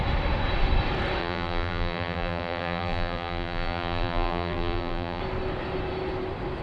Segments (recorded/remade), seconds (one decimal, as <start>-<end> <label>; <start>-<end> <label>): 0.0-1.2 recorded; 1.2-5.2 remade; 5.2-6.6 recorded

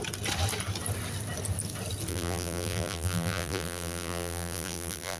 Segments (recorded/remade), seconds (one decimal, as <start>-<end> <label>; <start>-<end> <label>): 0.0-2.1 recorded; 2.1-5.2 remade

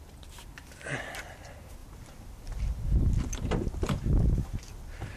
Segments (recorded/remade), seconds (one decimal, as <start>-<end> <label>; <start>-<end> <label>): 0.0-1.8 recorded; 1.8-3.2 remade; 3.2-5.2 recorded